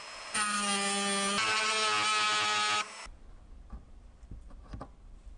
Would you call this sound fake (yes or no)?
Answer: no